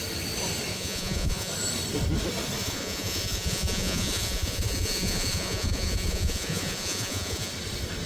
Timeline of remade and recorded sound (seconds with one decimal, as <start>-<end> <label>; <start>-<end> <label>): 0.0-0.7 recorded; 0.7-1.5 remade; 1.5-2.6 recorded; 2.6-7.5 remade; 7.5-8.1 recorded

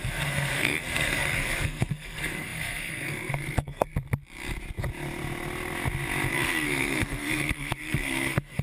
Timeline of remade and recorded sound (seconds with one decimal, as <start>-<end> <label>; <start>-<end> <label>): 0.0-3.9 remade; 3.9-6.3 recorded; 6.3-8.6 remade

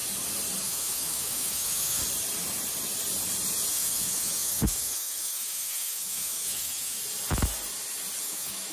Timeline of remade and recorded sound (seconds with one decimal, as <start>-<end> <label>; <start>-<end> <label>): 0.0-0.6 recorded; 0.6-2.0 remade; 2.0-3.7 recorded; 3.7-7.0 remade; 7.0-8.2 recorded; 8.2-8.7 remade

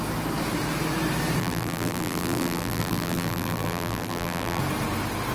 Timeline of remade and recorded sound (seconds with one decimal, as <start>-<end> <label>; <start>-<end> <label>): 0.0-1.4 recorded; 1.4-4.6 remade; 4.6-5.3 recorded

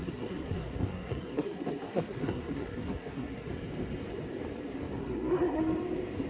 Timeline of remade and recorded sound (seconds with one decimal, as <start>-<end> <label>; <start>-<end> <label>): 0.0-3.5 remade; 3.5-5.0 recorded; 5.0-5.6 remade; 5.6-6.3 recorded

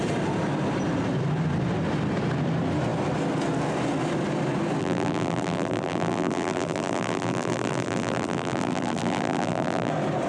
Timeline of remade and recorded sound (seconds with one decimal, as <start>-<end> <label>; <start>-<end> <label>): 0.0-4.8 recorded; 4.8-9.9 remade; 9.9-10.3 recorded